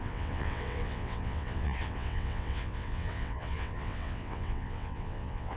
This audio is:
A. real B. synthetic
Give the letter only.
B